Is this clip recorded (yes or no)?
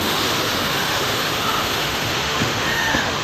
no